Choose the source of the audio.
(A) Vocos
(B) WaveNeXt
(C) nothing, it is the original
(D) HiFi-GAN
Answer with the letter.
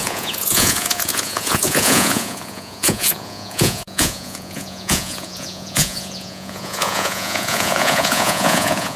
A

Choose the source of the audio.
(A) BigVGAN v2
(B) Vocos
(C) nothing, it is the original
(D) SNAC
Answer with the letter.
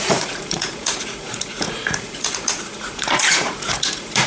B